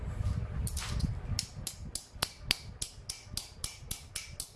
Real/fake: real